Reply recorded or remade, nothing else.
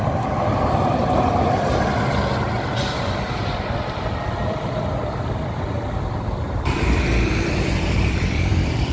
remade